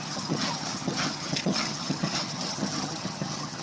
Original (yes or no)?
no